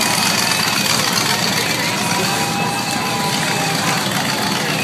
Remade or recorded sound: recorded